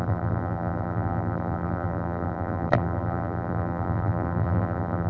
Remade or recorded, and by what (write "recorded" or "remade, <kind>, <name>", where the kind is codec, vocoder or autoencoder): remade, vocoder, BigVGAN v2